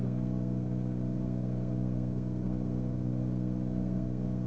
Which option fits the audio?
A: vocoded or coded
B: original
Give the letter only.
A